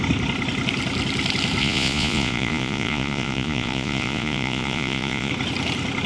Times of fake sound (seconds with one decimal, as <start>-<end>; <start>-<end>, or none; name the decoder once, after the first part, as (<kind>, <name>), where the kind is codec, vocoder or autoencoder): 1.6-5.3 (vocoder, Vocos)